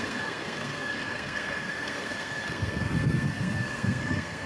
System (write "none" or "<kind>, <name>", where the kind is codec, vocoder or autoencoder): codec, SNAC